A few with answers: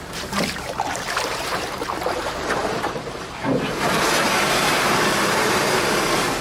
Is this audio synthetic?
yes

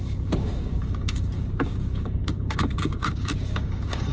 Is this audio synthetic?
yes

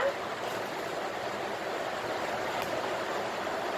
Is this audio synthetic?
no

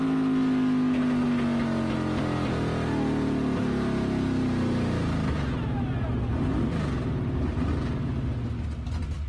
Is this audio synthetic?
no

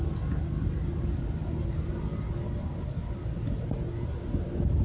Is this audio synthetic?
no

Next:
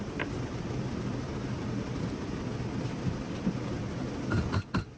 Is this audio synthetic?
no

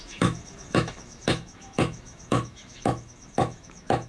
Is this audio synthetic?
yes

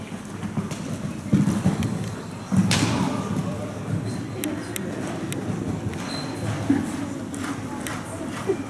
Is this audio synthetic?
no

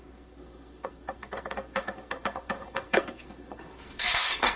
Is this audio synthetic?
yes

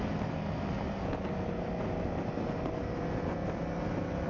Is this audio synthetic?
no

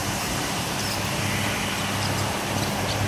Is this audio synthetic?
no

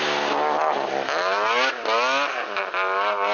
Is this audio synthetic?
no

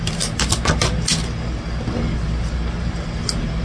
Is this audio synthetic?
no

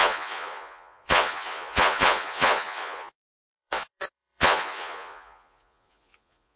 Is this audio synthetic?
yes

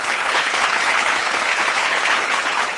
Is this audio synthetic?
yes